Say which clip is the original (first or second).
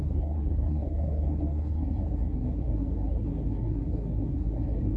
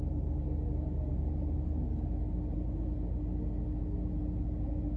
second